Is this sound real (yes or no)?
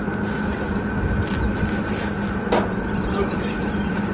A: yes